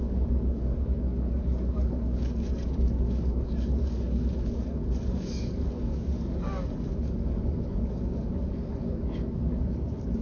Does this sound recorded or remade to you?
remade